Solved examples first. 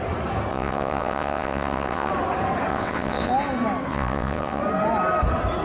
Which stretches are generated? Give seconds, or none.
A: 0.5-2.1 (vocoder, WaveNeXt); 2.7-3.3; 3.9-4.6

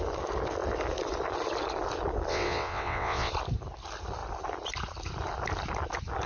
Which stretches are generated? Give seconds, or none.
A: 2.3-3.3 (vocoder, WaveNeXt)

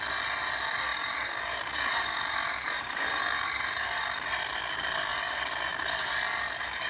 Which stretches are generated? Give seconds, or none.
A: 0.9-4.0 (vocoder, BigVGAN v2); 5.7-6.9

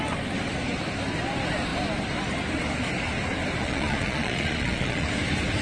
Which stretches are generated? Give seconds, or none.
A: 3.6-5.1 (vocoder, Vocos)